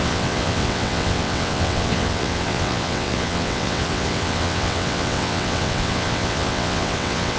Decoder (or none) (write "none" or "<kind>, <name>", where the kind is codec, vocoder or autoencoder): vocoder, WaveNeXt